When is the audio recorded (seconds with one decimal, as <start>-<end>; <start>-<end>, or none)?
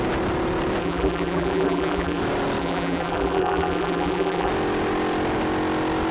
0.0-0.8; 2.2-2.6; 4.5-6.1